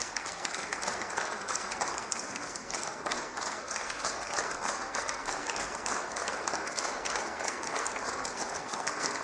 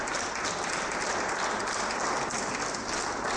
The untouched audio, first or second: second